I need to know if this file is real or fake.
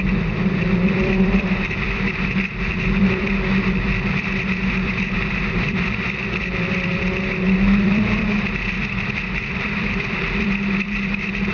fake